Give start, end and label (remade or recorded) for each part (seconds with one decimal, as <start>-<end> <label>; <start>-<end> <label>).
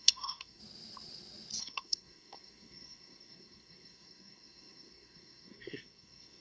0.0-0.6 remade; 0.6-1.6 recorded; 1.6-6.4 remade